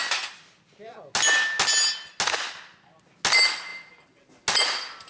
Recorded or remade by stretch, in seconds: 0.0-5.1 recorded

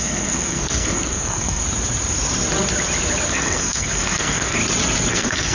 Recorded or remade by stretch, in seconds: 0.0-1.6 remade; 1.6-3.3 recorded; 3.3-4.6 remade; 4.6-5.1 recorded; 5.1-5.5 remade

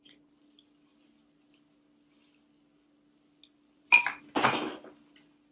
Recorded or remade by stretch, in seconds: 0.0-5.5 recorded

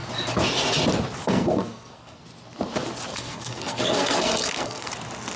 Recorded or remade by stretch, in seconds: 0.0-1.2 recorded; 1.2-2.2 remade; 2.2-3.1 recorded; 3.1-4.9 remade; 4.9-5.4 recorded

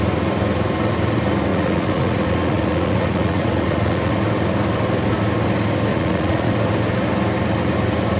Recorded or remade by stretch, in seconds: 0.0-1.5 recorded; 1.5-4.1 remade; 4.1-5.9 recorded; 5.9-6.5 remade; 6.5-8.2 recorded

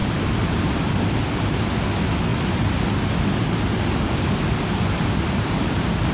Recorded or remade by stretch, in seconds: 0.0-0.6 remade; 0.6-2.3 recorded; 2.3-6.1 remade

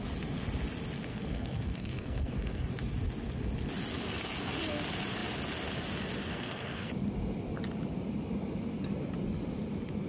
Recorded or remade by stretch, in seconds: 0.0-1.1 recorded; 1.1-2.7 remade; 2.7-6.3 recorded; 6.3-6.9 remade; 6.9-10.1 recorded